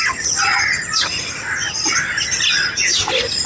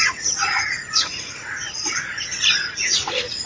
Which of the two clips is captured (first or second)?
first